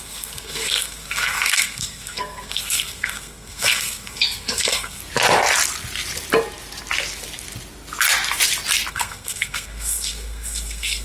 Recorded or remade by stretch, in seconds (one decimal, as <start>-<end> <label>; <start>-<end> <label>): 0.0-5.0 remade; 5.0-8.9 recorded; 8.9-11.0 remade